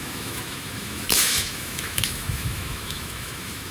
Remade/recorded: remade